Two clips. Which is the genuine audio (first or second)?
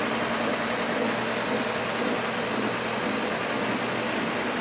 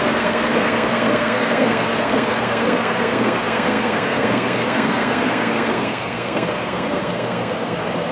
first